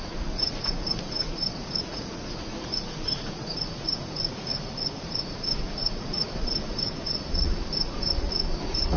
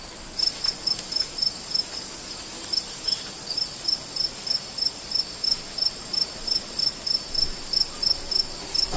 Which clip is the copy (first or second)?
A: first